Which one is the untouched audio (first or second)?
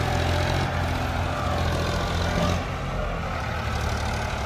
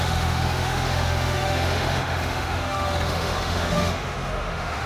first